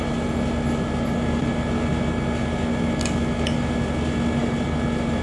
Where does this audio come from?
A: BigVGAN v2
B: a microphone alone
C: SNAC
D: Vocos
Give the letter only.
B